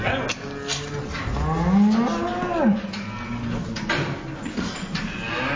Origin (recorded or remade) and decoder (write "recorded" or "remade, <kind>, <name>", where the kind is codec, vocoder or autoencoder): recorded